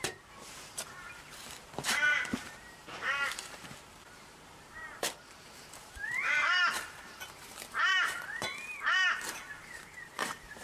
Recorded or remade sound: remade